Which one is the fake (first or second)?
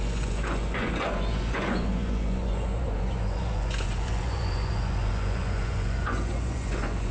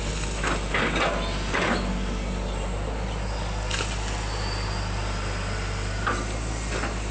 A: first